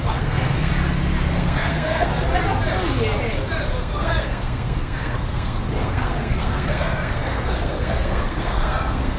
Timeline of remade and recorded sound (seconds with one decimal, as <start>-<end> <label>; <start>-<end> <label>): 0.0-0.7 remade; 0.7-1.3 recorded; 1.3-2.1 remade; 2.1-3.8 recorded; 3.8-9.2 remade